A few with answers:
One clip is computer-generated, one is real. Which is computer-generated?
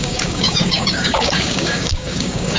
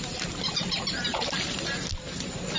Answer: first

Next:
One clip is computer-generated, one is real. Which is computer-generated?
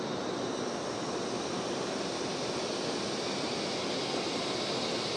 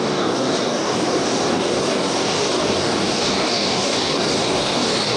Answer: second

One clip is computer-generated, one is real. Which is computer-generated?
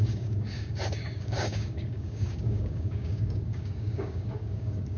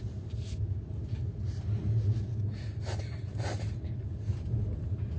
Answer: first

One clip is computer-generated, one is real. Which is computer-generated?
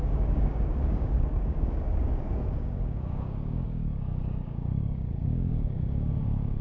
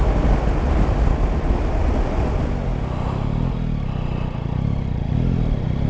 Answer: first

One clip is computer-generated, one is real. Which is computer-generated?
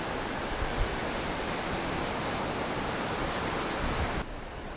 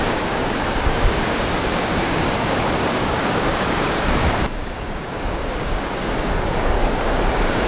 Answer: second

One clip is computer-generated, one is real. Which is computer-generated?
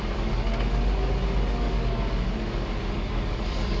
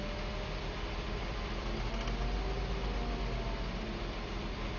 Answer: first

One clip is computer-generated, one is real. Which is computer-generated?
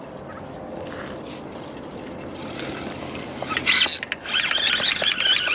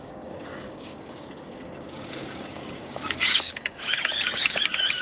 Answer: second